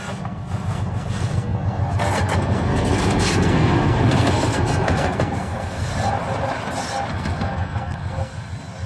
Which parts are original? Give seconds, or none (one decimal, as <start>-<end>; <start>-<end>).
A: 5.9-7.1; 8.3-8.9